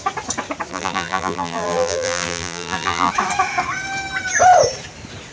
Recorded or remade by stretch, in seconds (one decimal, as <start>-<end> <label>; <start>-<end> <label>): 0.0-0.7 recorded; 0.7-3.1 remade; 3.1-5.3 recorded